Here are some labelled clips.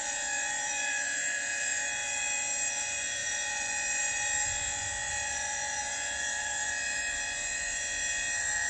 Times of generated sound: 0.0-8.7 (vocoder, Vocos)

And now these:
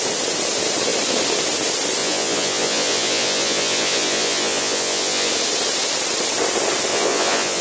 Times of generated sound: 2.0-5.3 (vocoder, Vocos); 6.9-7.6